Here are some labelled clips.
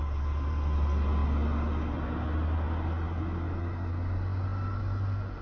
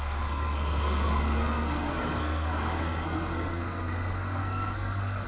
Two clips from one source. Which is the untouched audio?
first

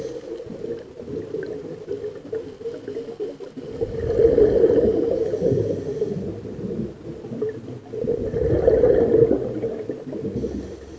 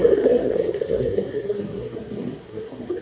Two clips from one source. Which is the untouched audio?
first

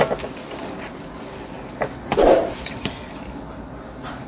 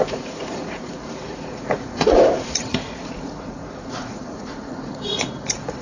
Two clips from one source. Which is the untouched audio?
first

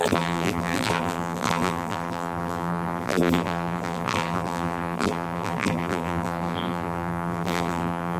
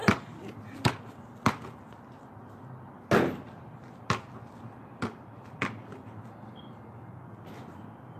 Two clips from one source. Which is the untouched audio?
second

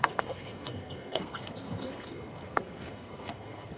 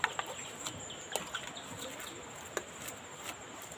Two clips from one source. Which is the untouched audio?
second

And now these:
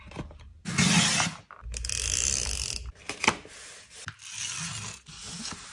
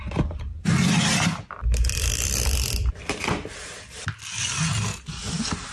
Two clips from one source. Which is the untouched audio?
first